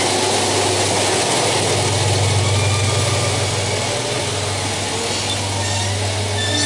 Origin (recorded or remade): recorded